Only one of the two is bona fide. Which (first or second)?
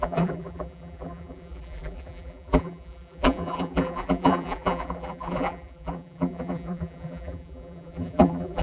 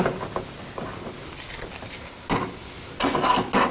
second